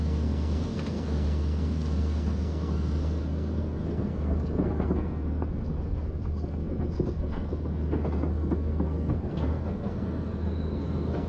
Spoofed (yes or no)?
yes